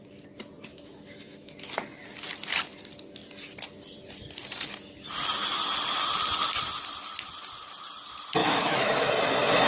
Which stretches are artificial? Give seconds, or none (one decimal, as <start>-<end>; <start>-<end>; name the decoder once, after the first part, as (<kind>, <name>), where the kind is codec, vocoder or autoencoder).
0.7-1.5 (autoencoder, DAC-VAE); 8.4-9.0